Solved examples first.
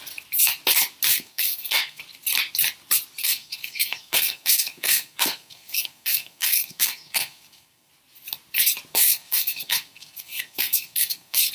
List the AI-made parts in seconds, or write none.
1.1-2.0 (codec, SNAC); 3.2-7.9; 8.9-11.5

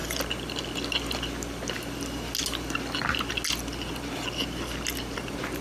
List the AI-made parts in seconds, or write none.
none

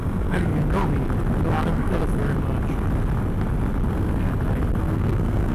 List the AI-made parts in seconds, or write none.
0.0-0.5 (codec, SNAC); 1.5-2.0; 3.9-4.3; 4.8-5.5

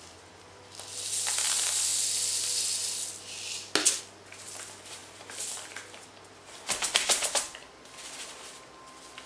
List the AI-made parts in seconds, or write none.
none

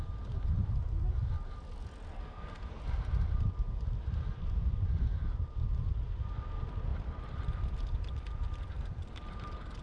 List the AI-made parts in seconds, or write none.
2.1-2.8 (codec, SNAC)

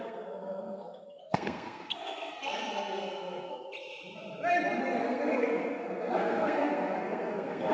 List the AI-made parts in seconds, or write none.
0.0-3.7 (codec, SNAC); 4.8-7.7